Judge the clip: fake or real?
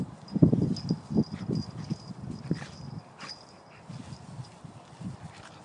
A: real